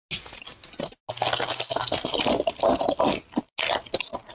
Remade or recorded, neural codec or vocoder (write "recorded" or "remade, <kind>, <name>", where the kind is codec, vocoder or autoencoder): recorded